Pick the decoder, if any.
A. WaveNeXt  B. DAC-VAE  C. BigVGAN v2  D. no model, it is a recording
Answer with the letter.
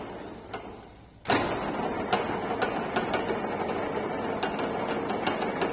D